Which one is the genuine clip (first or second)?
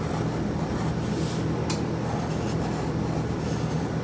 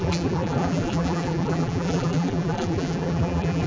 first